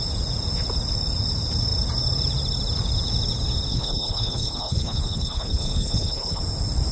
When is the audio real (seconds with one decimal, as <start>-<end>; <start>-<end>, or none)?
0.0-3.7; 6.4-6.9